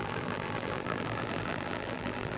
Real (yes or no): no